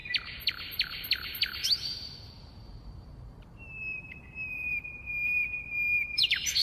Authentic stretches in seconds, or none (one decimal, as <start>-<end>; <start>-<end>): 5.1-6.0